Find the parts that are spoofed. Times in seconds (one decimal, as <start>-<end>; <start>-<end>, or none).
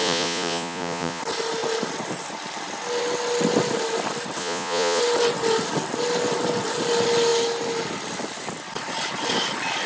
0.0-1.2; 4.4-5.0